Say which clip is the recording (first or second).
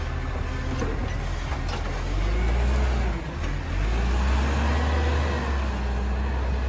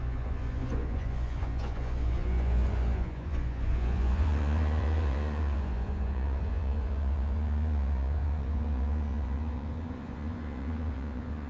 first